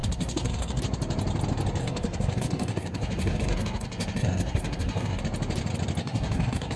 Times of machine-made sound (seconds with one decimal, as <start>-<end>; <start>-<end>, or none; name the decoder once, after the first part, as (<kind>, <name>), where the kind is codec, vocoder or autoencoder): 0.0-0.8 (codec, SNAC); 1.8-5.2; 6.0-6.8